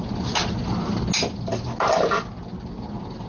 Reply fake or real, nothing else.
real